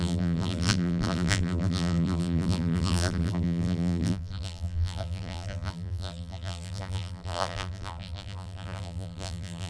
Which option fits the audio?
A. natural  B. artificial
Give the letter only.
B